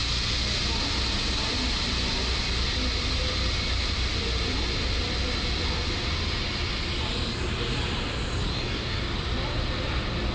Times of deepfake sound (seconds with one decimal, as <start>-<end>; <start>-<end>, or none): 8.5-9.0